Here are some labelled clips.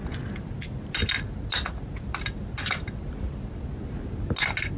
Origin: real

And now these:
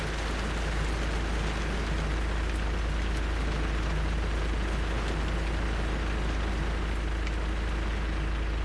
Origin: real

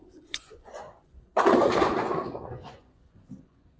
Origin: fake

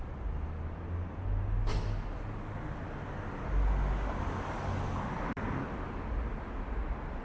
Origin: real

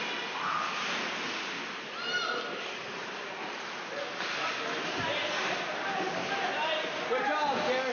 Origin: real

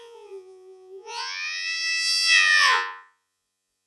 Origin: fake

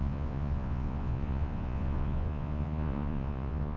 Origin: fake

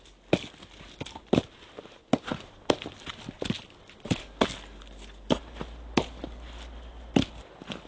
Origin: real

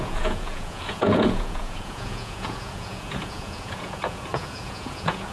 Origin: fake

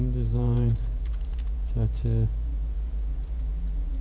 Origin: fake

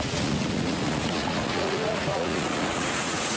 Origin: fake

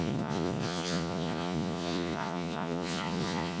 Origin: fake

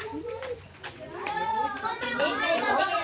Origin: fake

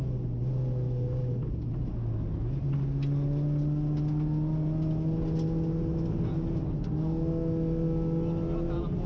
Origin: real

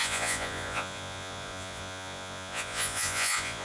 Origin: fake